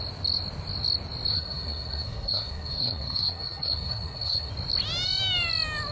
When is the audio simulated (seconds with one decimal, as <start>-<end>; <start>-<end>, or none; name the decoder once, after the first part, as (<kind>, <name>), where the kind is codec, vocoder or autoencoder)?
1.3-4.5 (codec, SNAC)